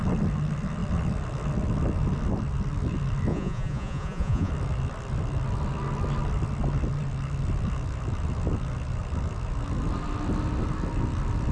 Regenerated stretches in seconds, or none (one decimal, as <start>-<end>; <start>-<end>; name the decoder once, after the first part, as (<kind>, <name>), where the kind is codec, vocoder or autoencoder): 3.3-4.5 (vocoder, Vocos)